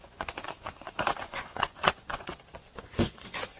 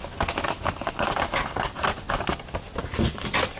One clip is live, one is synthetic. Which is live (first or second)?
second